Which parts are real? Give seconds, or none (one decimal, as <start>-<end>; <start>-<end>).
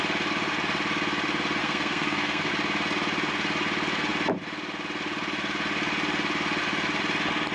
0.0-1.6; 2.5-7.5